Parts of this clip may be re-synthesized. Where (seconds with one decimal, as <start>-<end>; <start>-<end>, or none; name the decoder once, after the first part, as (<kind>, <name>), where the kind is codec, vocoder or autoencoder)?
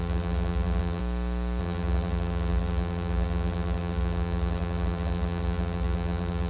0.0-1.0 (vocoder, BigVGAN v2); 1.6-6.5